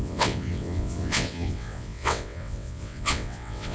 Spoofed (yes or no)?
yes